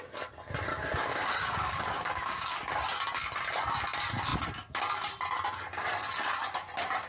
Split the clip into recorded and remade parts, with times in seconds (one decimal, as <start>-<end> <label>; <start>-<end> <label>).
0.0-0.7 recorded; 0.7-2.7 remade; 2.7-7.1 recorded